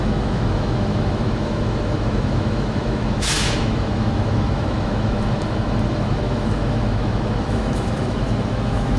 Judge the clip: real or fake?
fake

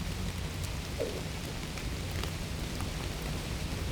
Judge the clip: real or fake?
real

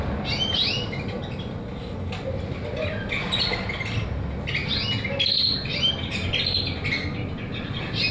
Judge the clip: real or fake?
real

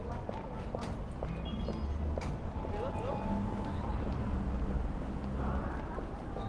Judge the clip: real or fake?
real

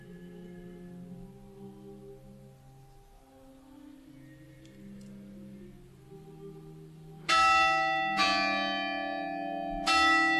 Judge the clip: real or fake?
real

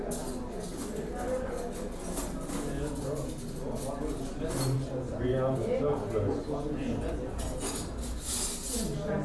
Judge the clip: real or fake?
real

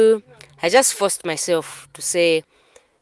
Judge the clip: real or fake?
fake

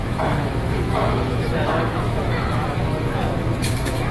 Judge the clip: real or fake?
fake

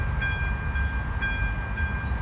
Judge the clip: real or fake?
real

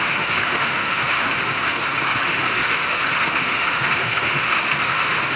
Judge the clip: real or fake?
fake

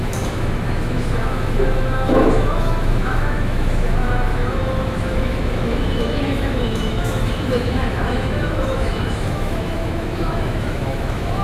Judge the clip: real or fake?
fake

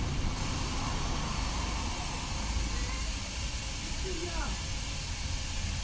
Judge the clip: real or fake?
real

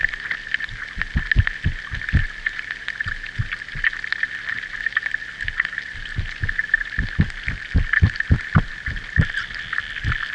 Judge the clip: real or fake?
real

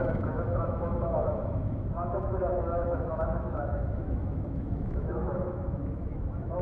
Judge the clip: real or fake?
fake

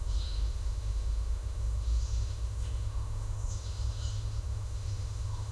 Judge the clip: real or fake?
fake